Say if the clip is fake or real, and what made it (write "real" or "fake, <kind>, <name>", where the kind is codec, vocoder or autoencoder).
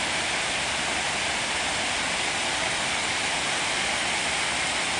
real